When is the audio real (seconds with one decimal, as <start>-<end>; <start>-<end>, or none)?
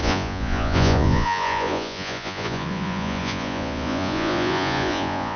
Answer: none